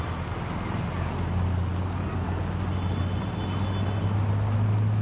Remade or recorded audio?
recorded